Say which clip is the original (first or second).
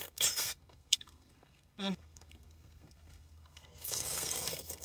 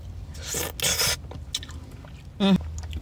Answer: second